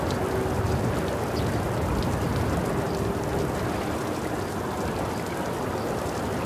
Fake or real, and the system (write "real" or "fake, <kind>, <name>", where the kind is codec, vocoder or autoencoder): real